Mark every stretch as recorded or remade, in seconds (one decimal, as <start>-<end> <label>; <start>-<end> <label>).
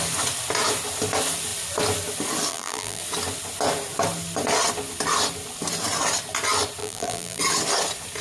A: 0.0-2.5 recorded; 2.5-3.0 remade; 3.0-6.8 recorded; 6.8-7.4 remade; 7.4-8.2 recorded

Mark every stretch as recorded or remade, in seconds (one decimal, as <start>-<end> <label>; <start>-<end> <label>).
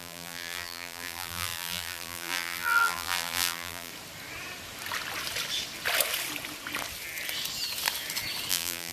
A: 0.0-3.9 remade; 3.9-8.5 recorded; 8.5-8.9 remade